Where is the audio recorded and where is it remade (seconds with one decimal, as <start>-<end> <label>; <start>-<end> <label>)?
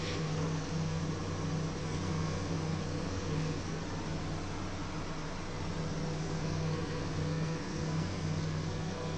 0.0-1.0 remade; 1.0-1.8 recorded; 1.8-3.8 remade; 3.8-6.2 recorded; 6.2-9.2 remade